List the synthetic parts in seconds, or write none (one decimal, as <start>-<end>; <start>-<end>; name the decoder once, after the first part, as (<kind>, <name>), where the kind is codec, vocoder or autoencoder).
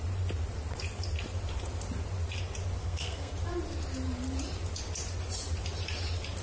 2.8-3.3 (codec, SNAC)